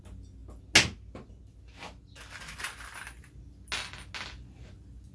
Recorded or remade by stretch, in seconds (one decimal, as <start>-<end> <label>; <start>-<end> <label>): 0.0-5.1 recorded